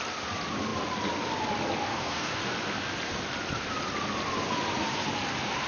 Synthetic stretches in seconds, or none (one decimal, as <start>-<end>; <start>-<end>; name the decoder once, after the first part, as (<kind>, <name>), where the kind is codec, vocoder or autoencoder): 1.9-2.4 (codec, SNAC)